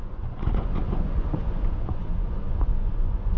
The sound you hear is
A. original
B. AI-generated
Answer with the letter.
B